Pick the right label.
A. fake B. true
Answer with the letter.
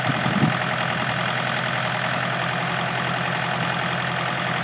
B